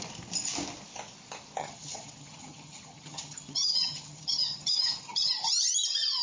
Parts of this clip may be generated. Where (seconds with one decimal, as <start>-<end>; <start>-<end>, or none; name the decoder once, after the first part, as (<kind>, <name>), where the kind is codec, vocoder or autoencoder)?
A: 1.6-5.3 (vocoder, HiFi-GAN)